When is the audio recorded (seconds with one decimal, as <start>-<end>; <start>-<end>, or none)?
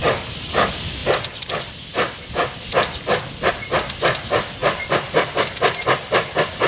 0.0-1.0; 3.5-4.6; 5.5-6.7